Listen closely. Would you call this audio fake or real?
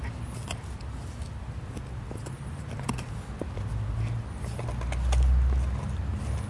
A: real